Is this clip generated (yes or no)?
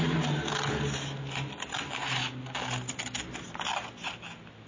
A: no